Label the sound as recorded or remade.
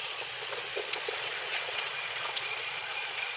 remade